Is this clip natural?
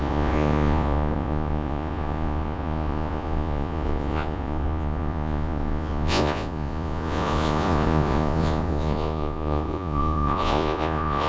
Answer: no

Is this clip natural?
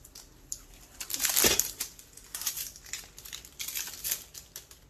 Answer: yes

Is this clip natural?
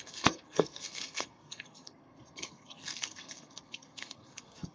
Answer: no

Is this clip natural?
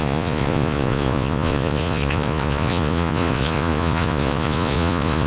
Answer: no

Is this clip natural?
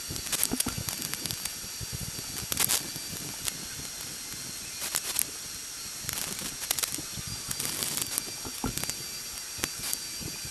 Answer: yes